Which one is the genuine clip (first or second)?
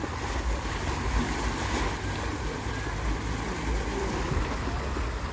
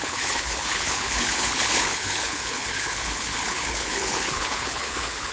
first